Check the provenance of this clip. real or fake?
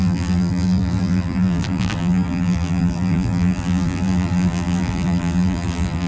fake